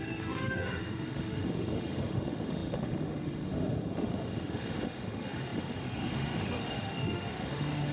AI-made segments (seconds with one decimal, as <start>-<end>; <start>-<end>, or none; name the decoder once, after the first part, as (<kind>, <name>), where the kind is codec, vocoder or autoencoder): 0.0-7.9 (autoencoder, DAC-VAE)